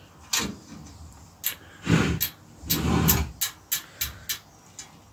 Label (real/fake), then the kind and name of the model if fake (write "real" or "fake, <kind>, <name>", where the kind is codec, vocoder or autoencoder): real